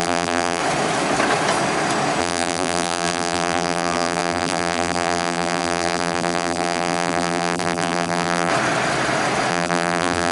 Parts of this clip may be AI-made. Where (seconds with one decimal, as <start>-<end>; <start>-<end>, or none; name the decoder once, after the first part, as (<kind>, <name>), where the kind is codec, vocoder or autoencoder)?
0.0-0.6 (vocoder, BigVGAN v2); 2.2-8.5; 9.5-10.3